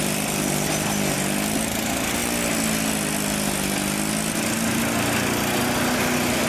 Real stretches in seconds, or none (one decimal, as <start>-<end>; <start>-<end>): 0.0-6.5